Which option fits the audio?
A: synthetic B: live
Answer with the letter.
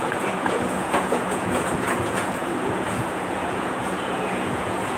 A